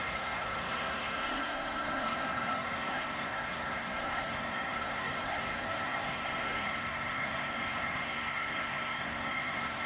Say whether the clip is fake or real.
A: fake